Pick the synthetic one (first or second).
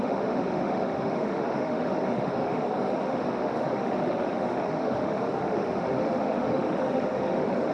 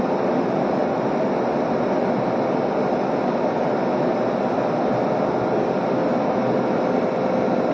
first